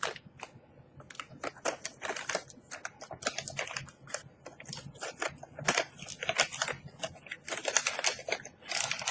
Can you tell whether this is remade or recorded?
recorded